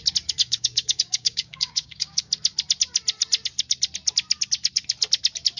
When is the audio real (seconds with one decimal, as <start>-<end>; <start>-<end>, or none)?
0.0-0.4; 2.3-5.6